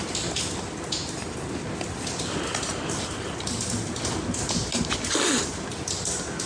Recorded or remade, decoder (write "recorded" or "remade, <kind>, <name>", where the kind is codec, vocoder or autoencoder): recorded